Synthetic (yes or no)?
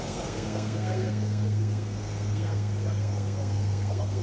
yes